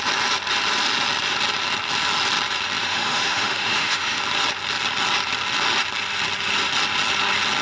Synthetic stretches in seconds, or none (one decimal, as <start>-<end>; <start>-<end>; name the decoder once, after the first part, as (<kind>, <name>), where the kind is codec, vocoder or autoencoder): 2.8-4.2 (autoencoder, DAC-VAE)